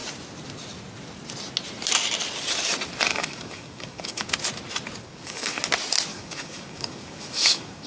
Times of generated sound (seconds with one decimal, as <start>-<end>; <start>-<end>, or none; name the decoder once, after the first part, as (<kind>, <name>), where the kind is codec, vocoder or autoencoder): 3.1-4.3 (codec, DAC); 5.0-5.6; 6.1-7.9